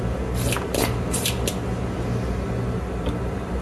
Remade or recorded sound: recorded